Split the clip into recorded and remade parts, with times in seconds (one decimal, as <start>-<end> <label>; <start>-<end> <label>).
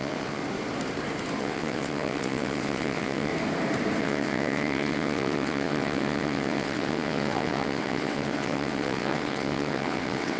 0.0-0.4 remade; 0.4-1.4 recorded; 1.4-3.3 remade; 3.3-4.0 recorded; 4.0-10.4 remade